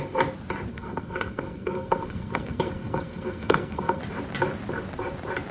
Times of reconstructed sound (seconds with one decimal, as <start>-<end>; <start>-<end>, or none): 0.7-4.0